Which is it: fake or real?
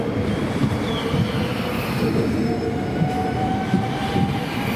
real